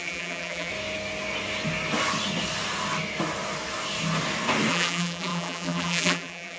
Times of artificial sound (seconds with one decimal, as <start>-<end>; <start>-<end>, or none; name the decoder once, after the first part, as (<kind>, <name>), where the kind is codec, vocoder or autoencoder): 0.0-0.7 (vocoder, BigVGAN v2); 4.7-6.6